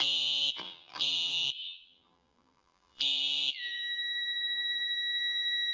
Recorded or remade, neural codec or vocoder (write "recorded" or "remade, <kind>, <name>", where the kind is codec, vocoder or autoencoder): remade, vocoder, BigVGAN v2